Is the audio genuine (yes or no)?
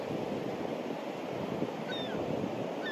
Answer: yes